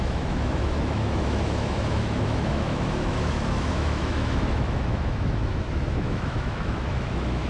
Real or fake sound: fake